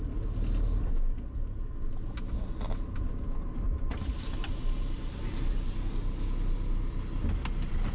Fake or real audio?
real